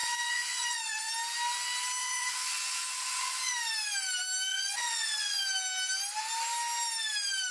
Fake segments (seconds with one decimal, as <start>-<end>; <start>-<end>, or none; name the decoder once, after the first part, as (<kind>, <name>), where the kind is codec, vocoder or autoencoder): 0.0-1.1 (vocoder, Vocos); 2.0-3.5; 4.5-5.4